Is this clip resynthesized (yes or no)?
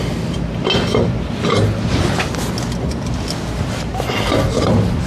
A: no